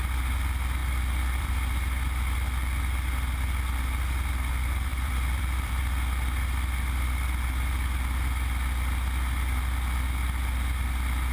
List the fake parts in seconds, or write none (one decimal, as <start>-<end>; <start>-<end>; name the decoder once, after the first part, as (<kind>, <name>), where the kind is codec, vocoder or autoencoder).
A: 0.8-1.5 (vocoder, BigVGAN v2); 4.9-5.8